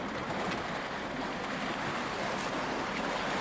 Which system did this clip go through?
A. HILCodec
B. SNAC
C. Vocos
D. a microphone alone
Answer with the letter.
D